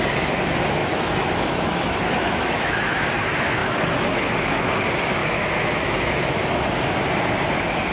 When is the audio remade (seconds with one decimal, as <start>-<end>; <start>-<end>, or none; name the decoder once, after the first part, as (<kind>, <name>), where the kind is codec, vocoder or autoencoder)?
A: 0.8-3.0 (autoencoder, DAC-VAE); 3.6-4.7; 5.2-6.2

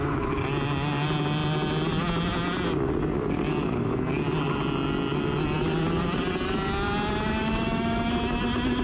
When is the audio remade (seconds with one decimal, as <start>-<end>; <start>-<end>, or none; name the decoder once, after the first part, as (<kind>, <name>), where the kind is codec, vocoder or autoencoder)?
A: 7.4-8.1 (autoencoder, DAC-VAE)

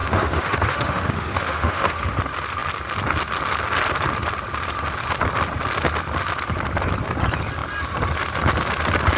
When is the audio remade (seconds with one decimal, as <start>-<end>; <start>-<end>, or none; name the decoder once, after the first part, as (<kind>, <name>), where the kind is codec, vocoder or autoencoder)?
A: 0.0-2.2 (autoencoder, DAC-VAE)